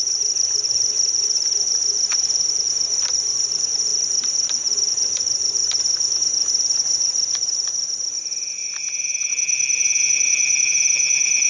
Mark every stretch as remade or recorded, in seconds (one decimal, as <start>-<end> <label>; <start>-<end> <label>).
0.0-11.5 recorded